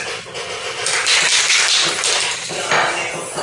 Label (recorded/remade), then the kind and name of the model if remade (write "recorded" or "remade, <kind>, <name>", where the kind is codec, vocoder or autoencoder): recorded